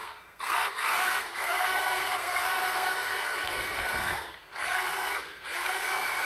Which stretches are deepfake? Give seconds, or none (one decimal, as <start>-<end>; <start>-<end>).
0.0-6.3